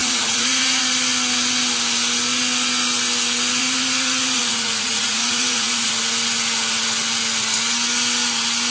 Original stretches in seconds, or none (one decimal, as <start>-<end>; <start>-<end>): 0.8-3.6; 5.9-8.7